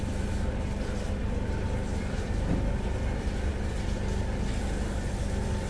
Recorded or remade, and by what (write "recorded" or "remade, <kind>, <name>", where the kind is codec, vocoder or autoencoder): remade, vocoder, BigVGAN v2